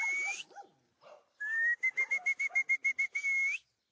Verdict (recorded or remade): recorded